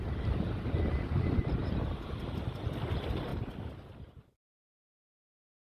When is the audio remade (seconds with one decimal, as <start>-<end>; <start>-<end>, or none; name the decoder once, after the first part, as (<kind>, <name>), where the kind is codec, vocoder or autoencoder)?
1.6-2.2 (vocoder, BigVGAN v2)